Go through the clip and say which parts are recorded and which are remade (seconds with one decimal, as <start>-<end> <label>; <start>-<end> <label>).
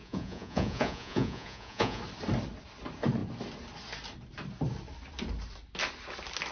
0.0-2.0 remade; 2.0-6.5 recorded